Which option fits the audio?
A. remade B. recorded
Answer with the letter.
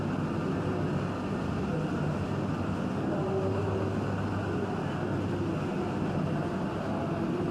B